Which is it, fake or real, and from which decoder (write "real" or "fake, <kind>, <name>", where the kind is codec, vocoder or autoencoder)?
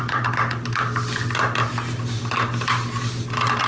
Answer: real